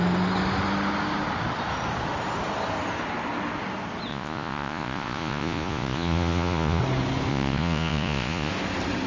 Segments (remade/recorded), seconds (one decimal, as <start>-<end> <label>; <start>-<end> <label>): 0.0-4.1 recorded; 4.1-6.8 remade; 6.8-7.3 recorded; 7.3-8.5 remade; 8.5-9.1 recorded